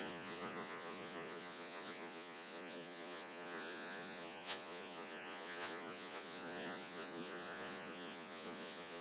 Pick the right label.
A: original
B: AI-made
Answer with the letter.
B